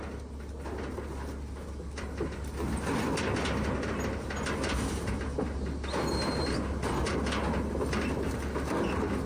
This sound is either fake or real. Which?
real